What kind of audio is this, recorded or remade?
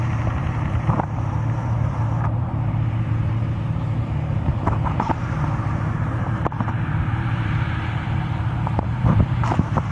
remade